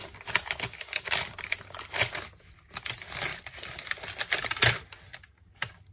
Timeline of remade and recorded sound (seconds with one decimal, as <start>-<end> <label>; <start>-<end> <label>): 0.0-5.9 recorded